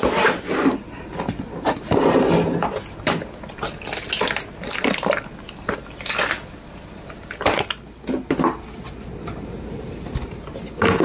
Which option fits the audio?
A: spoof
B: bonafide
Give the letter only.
B